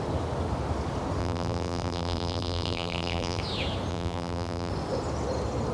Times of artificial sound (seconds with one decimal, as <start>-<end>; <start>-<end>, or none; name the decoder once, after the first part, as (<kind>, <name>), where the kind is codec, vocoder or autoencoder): 1.2-3.4 (vocoder, BigVGAN v2); 3.9-4.7